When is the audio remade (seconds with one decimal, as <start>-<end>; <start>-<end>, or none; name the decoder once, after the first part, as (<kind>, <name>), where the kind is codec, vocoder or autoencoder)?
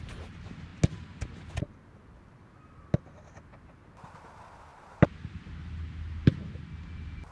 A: none